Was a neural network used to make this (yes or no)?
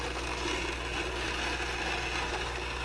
no